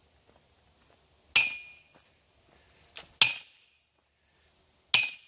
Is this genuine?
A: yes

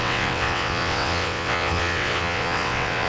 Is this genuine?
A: no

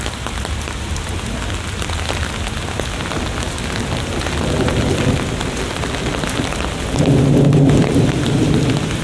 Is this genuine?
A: yes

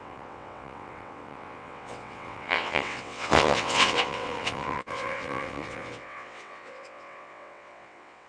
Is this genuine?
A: no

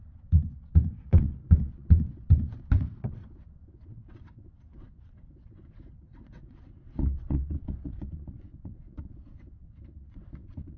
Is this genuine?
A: no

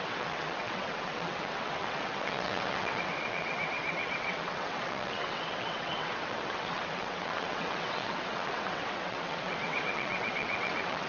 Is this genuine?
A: no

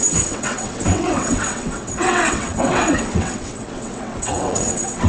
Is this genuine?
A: no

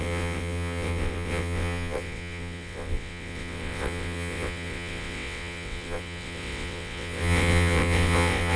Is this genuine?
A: no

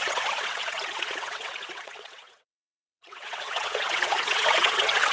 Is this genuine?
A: no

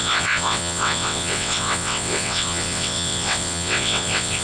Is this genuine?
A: no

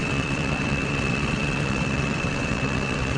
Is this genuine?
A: no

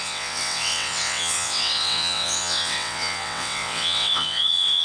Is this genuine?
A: no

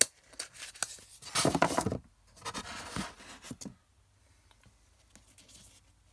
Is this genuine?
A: yes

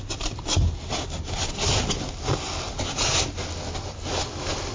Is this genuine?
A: yes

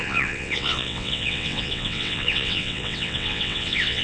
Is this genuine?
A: no